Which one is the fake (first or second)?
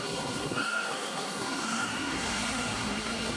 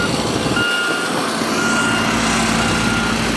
first